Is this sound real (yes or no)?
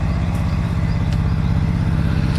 no